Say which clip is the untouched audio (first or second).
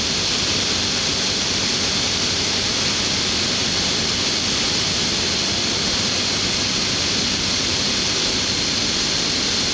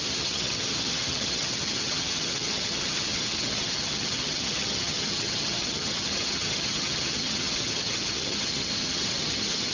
first